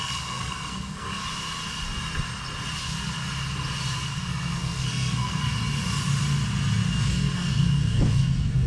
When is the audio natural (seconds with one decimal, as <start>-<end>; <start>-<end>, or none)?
1.2-4.1; 5.5-6.9